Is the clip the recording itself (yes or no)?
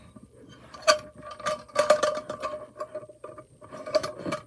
yes